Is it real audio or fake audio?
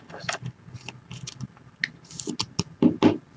real